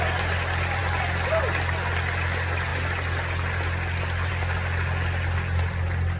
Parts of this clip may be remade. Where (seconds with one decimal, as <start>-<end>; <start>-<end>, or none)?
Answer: none